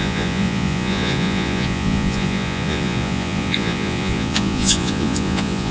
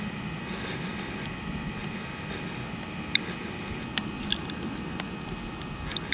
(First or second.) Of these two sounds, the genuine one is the second